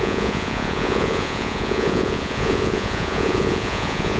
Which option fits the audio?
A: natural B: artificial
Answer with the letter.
B